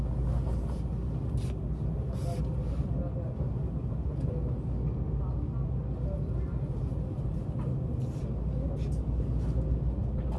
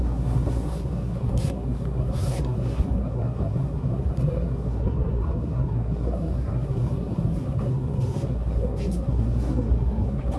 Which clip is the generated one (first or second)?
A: second